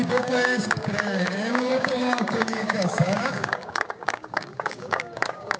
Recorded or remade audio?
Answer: remade